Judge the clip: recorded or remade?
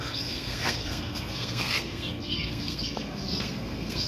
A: remade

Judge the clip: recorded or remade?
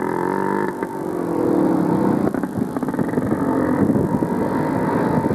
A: recorded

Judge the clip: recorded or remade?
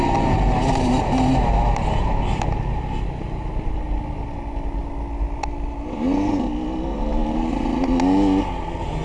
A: recorded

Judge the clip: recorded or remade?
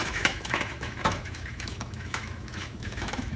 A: remade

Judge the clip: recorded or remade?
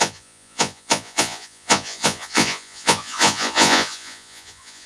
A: remade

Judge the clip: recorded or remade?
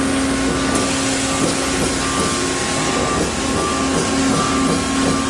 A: recorded